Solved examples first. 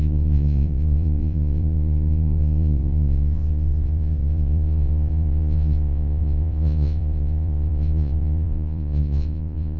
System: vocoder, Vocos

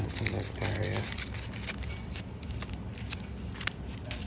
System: none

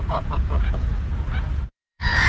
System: vocoder, Vocos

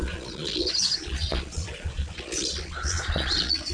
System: vocoder, Vocos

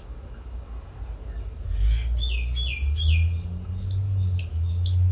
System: none